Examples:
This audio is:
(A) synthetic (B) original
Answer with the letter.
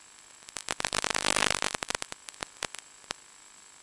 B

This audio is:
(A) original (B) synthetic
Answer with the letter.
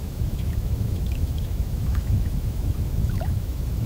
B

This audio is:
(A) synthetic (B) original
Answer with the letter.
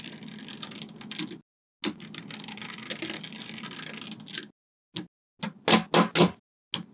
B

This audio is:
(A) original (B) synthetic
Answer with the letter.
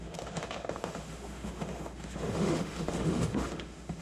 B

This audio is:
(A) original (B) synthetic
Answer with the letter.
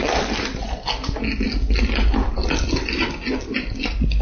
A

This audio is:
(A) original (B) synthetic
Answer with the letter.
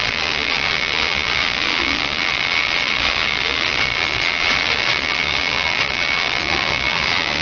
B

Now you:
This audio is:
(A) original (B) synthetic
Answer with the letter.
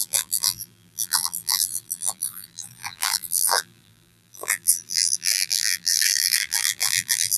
B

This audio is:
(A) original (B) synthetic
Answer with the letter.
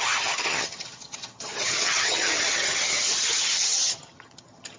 B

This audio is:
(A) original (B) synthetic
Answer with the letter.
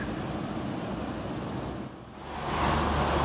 A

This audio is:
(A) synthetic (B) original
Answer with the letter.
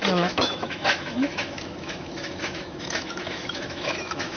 A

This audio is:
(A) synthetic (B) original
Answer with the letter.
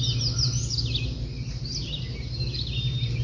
B